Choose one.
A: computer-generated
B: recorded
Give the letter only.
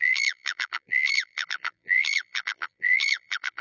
A